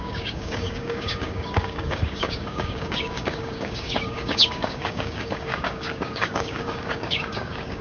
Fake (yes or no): yes